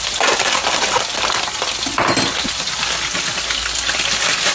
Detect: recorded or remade recorded